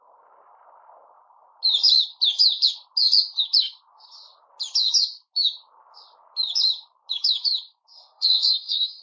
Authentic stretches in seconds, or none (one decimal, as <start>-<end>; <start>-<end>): 0.0-7.9